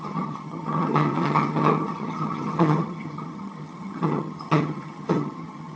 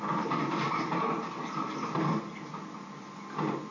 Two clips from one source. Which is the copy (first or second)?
first